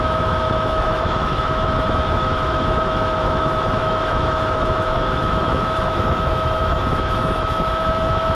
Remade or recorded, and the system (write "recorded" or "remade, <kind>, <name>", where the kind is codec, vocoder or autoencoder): remade, autoencoder, DAC-VAE